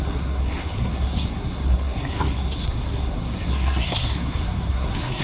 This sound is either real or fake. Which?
fake